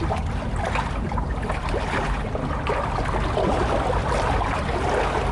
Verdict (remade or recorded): recorded